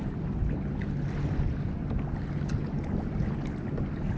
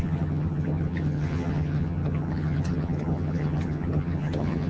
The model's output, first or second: second